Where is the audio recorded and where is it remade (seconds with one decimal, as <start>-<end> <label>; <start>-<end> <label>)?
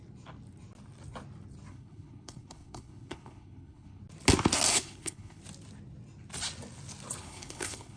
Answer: 0.0-1.7 recorded; 1.7-4.0 remade; 4.0-4.7 recorded; 4.7-5.4 remade; 5.4-7.2 recorded; 7.2-8.0 remade